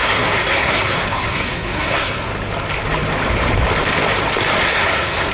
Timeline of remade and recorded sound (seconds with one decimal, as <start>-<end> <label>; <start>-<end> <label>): 0.0-2.3 remade; 2.3-4.6 recorded; 4.6-5.3 remade